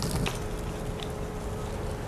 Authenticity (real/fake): real